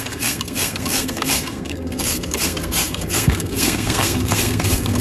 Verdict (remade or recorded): remade